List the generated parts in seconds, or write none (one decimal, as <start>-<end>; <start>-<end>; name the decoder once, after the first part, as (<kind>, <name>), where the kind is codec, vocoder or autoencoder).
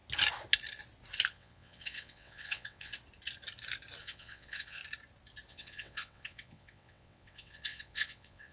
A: 1.3-2.9 (vocoder, WaveNeXt); 4.0-4.8; 5.5-8.5